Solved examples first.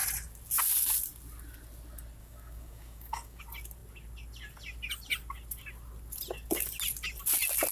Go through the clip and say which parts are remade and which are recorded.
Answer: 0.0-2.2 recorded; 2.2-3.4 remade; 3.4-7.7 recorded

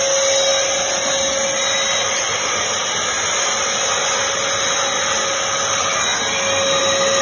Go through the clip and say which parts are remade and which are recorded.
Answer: 0.0-7.2 recorded

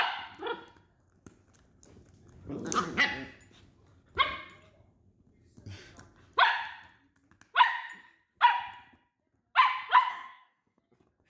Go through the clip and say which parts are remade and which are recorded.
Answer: 0.0-10.1 recorded; 10.1-10.8 remade; 10.8-11.3 recorded

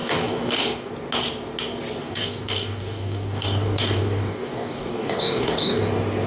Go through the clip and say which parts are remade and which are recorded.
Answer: 0.0-0.9 remade; 0.9-2.0 recorded; 2.0-5.8 remade; 5.8-6.3 recorded

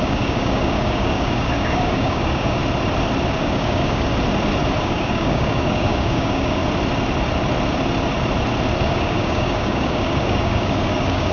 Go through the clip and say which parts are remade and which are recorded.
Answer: 0.0-2.6 remade; 2.6-3.4 recorded; 3.4-4.1 remade; 4.1-4.8 recorded; 4.8-6.6 remade; 6.6-8.8 recorded; 8.8-11.3 remade